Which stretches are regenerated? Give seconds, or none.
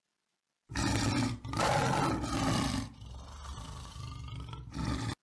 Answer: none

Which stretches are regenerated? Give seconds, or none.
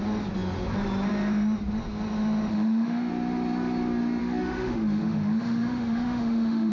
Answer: 2.5-3.1 (autoencoder, DAC-VAE); 4.2-6.7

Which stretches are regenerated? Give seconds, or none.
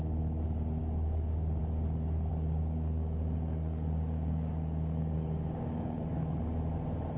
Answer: 0.8-1.6 (codec, DAC); 2.3-6.4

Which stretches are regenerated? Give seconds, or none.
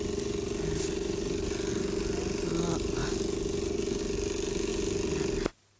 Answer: none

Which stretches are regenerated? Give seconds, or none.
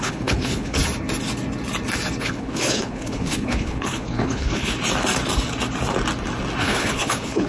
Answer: 0.0-0.8 (codec, HILCodec); 2.2-4.7; 6.6-7.5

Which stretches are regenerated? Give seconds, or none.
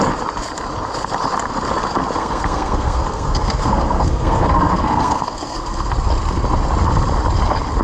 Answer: 2.2-5.9 (codec, SNAC)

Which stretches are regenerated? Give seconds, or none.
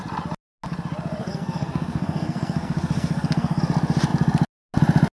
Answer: 1.2-3.6 (codec, SNAC)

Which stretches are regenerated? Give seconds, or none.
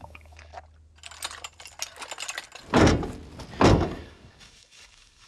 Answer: 0.0-0.5 (codec, DAC); 3.7-5.3